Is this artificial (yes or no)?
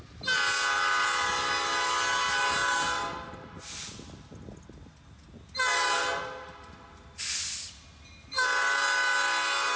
no